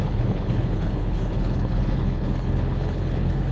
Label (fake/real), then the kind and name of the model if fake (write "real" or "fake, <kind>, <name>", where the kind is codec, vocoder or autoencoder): fake, codec, HILCodec